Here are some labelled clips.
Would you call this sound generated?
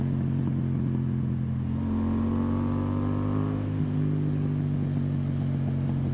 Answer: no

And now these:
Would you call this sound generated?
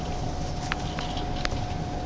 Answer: no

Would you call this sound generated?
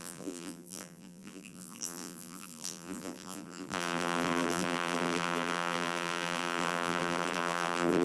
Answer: yes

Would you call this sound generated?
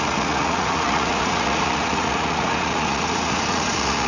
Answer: yes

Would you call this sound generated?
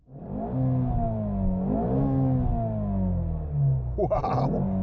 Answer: no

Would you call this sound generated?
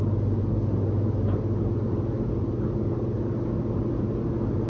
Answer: no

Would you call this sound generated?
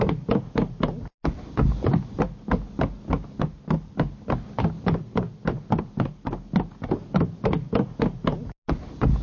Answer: no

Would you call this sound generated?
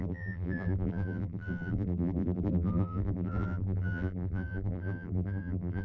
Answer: yes